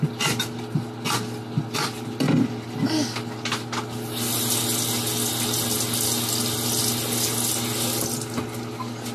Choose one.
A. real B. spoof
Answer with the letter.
A